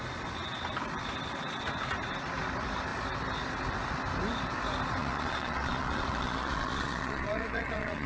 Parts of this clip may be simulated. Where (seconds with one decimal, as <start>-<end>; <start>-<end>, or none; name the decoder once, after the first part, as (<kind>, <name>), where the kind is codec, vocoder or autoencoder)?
5.0-8.1 (vocoder, Vocos)